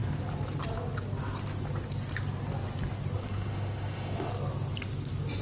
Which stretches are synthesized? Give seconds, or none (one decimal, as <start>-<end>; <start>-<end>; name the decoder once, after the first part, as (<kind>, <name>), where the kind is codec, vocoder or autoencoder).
3.2-4.3 (autoencoder, DAC-VAE)